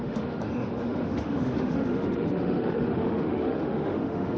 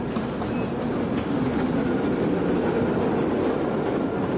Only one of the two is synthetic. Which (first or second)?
first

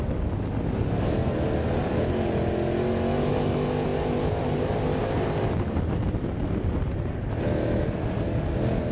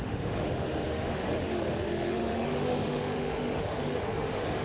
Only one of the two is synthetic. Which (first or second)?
second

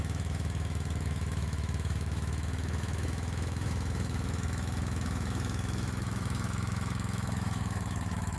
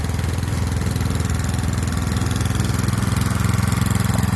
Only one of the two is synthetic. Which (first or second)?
first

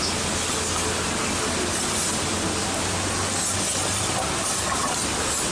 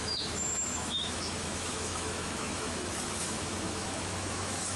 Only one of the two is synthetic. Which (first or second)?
second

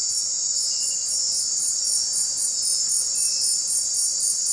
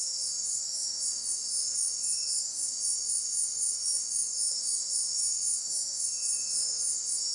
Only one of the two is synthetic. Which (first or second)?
second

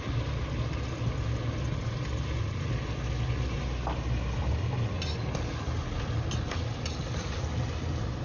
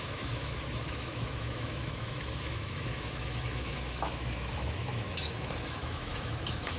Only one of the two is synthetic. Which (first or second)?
second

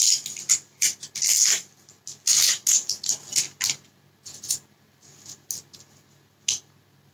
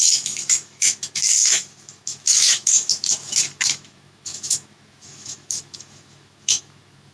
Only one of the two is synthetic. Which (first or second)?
second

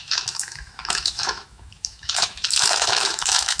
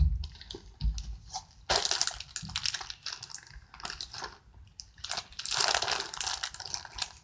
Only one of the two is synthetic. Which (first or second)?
first